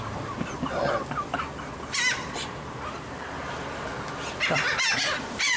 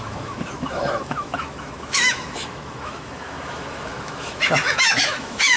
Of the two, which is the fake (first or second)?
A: second